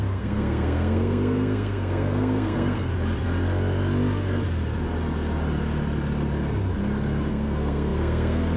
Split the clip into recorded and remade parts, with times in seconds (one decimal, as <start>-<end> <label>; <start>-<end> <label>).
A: 0.0-2.9 remade; 2.9-7.3 recorded; 7.3-8.6 remade